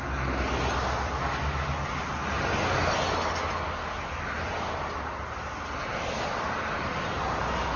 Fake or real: real